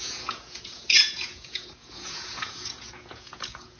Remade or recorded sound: remade